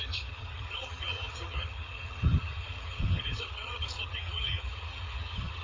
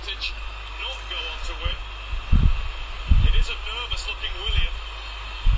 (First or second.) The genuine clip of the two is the second